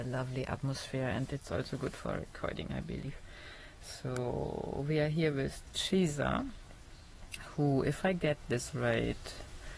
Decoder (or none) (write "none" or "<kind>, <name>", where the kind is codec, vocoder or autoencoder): autoencoder, DAC-VAE